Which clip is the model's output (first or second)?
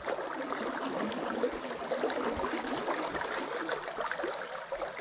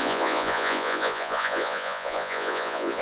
second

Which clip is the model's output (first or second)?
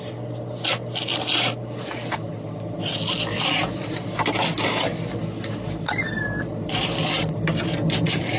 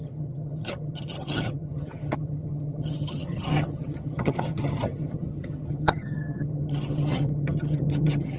second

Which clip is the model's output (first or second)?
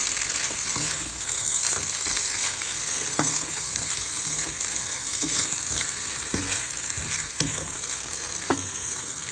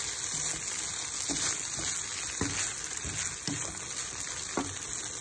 first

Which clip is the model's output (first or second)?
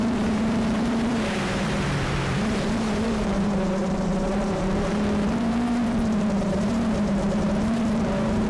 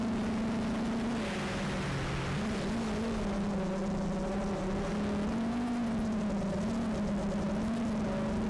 first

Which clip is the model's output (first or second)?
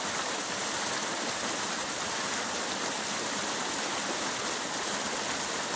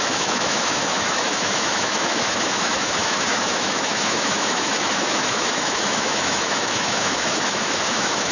second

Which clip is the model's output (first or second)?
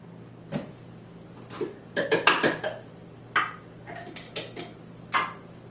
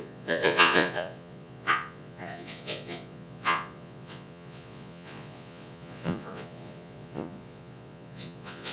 second